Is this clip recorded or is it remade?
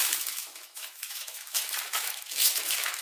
remade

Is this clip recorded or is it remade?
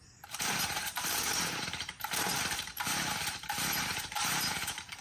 remade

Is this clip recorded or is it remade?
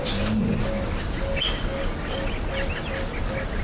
recorded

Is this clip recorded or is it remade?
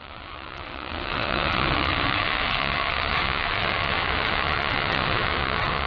remade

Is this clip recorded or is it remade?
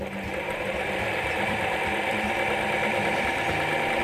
remade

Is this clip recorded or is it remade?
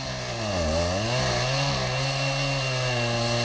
recorded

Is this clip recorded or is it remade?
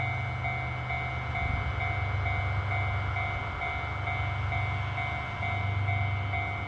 recorded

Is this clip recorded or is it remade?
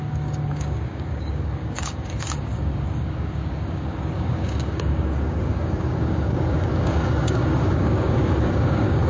remade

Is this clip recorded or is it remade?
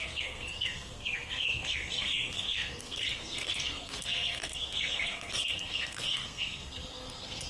remade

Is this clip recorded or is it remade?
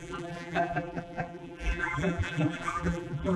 remade